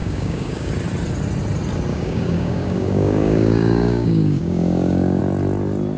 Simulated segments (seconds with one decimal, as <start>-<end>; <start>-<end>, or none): 0.0-0.7; 1.9-5.2